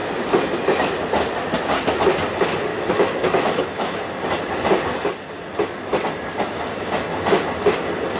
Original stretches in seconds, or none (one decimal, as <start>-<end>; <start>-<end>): 0.0-2.7; 4.0-8.2